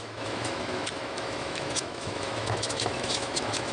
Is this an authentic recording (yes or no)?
no